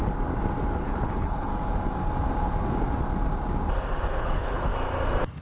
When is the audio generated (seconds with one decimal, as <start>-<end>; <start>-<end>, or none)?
0.7-1.5; 4.1-4.7